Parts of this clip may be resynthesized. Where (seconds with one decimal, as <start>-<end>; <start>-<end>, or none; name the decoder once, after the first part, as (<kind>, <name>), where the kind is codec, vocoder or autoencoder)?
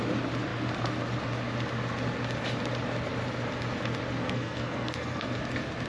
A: 4.2-5.4 (codec, SNAC)